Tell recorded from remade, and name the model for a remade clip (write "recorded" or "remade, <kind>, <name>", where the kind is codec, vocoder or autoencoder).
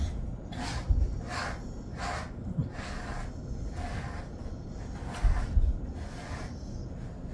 recorded